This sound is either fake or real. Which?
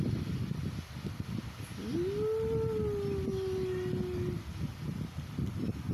real